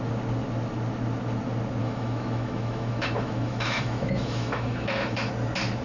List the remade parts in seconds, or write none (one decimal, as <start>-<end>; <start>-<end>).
1.8-5.3